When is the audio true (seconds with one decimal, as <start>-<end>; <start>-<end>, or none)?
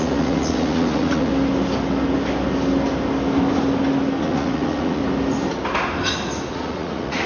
1.3-4.2; 5.0-6.5